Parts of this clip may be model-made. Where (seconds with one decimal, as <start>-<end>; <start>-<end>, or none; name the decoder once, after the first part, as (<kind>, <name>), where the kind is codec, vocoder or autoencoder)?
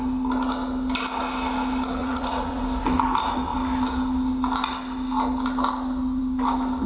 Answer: 2.0-2.6 (vocoder, Vocos)